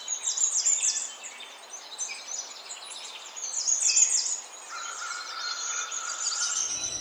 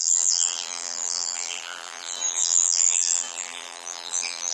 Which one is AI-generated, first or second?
second